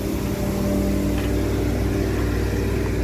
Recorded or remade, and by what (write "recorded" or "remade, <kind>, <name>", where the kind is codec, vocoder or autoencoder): recorded